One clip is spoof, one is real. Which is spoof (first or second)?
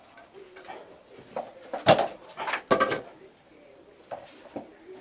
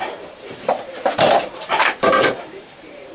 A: second